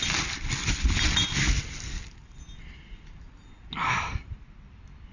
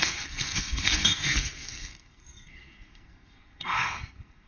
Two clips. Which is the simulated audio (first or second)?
second